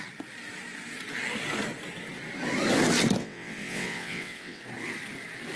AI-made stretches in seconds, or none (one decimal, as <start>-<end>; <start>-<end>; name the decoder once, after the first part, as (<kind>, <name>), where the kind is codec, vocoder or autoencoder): 3.2-4.6 (vocoder, WaveNeXt)